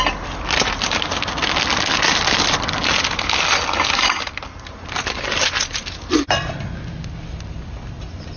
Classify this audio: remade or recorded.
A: recorded